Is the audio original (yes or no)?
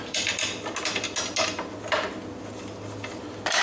yes